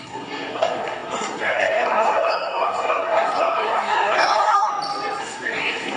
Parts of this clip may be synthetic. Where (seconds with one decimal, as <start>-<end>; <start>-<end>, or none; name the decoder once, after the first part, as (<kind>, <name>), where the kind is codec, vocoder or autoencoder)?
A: 0.0-4.7 (codec, SNAC); 5.2-6.0

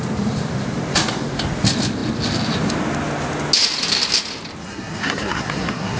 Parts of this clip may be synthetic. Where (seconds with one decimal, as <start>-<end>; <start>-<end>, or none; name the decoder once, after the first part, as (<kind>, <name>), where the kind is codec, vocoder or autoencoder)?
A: 4.6-6.0 (codec, SNAC)

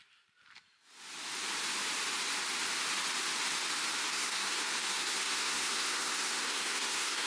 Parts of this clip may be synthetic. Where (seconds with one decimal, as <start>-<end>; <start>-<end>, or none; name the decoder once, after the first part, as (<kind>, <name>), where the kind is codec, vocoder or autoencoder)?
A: 4.1-7.3 (codec, SNAC)

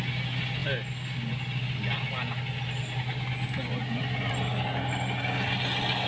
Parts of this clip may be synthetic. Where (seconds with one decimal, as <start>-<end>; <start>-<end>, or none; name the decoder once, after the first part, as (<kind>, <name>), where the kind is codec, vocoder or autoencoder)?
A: none